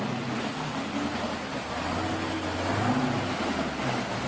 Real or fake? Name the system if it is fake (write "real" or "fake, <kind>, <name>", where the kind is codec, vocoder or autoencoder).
real